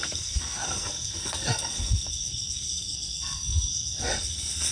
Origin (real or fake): fake